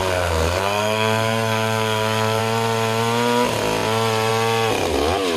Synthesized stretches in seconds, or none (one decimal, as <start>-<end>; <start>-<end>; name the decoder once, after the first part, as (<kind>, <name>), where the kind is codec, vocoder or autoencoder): 0.0-2.4 (codec, SNAC)